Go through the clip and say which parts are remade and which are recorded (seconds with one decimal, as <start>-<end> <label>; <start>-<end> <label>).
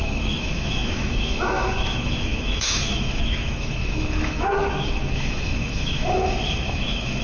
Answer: 0.0-7.2 remade